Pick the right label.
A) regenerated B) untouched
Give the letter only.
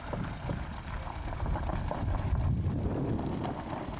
B